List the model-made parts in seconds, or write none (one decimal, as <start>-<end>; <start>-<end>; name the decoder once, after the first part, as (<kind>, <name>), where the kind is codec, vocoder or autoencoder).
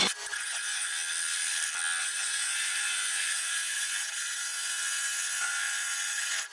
0.0-0.9 (vocoder, Vocos); 2.0-6.5